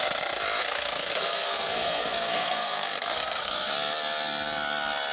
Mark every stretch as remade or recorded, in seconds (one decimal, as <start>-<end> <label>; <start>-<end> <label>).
0.0-0.6 recorded; 0.6-3.7 remade; 3.7-5.1 recorded